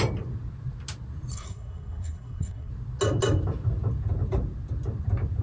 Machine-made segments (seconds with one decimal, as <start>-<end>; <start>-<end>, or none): 1.3-2.7